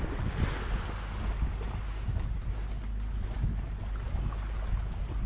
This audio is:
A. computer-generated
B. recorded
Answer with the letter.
B